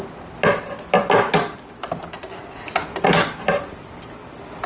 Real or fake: real